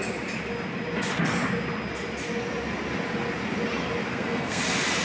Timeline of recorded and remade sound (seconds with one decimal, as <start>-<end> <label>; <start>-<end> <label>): 0.0-4.1 recorded; 4.1-4.6 remade; 4.6-5.0 recorded